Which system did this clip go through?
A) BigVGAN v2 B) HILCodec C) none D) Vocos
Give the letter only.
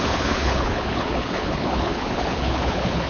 B